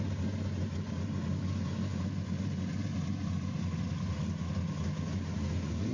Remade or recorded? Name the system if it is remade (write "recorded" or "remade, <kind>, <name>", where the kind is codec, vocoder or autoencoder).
recorded